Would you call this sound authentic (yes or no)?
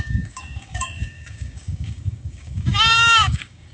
no